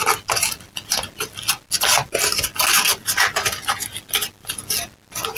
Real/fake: real